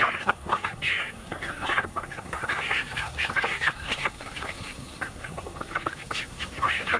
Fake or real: fake